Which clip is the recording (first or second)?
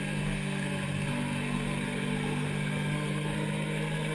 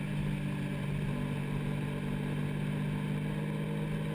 second